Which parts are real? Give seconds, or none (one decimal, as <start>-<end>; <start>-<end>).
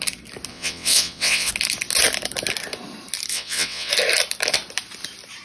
0.0-0.5; 1.5-3.3; 3.9-5.4